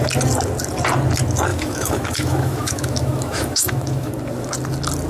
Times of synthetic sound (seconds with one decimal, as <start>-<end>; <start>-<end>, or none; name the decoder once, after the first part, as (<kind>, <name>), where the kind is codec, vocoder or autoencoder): 1.5-4.1 (autoencoder, DAC-VAE)